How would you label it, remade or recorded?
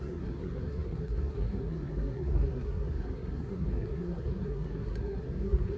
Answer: remade